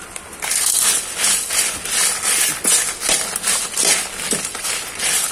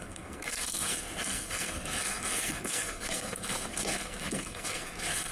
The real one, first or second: first